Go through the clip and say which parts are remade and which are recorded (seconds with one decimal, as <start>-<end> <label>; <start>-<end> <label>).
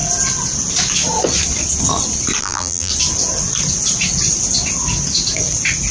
0.0-2.4 recorded; 2.4-2.9 remade; 2.9-5.9 recorded